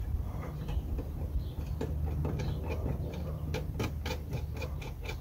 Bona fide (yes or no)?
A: yes